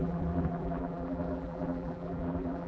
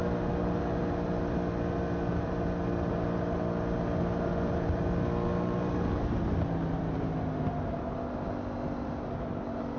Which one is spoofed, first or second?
first